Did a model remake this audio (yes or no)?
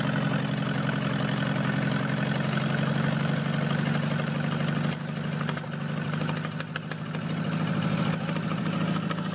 no